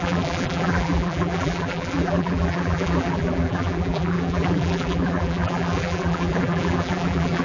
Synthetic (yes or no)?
yes